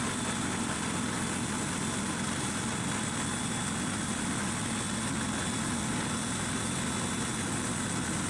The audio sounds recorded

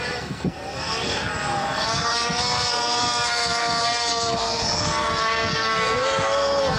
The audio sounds remade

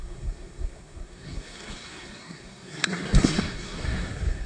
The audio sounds remade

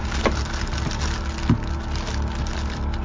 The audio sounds recorded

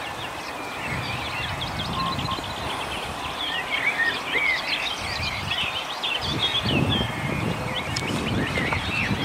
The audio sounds remade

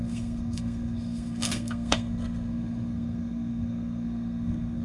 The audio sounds remade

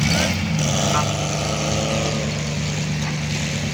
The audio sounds recorded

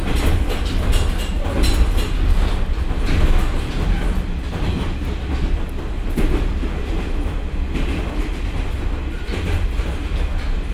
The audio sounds recorded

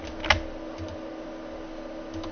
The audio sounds recorded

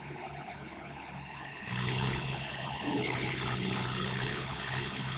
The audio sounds remade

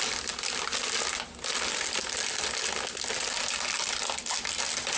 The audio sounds recorded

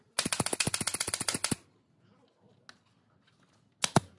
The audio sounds recorded